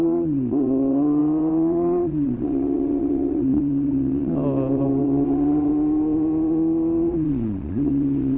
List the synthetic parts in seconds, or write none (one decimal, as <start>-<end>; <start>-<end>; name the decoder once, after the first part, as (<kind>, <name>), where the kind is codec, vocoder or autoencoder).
0.0-4.4 (vocoder, WaveNeXt); 5.0-5.7; 7.1-8.4